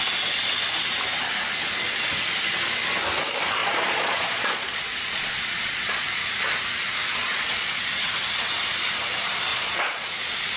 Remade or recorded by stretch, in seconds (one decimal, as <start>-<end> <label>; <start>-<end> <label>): 0.0-3.6 recorded; 3.6-6.2 remade; 6.2-7.1 recorded; 7.1-7.8 remade; 7.8-9.5 recorded; 9.5-10.6 remade